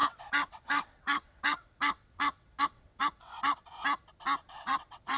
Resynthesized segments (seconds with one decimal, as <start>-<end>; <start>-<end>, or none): 0.0-3.7; 4.5-5.2